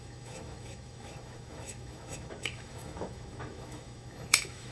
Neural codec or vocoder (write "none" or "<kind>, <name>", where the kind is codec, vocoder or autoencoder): autoencoder, DAC-VAE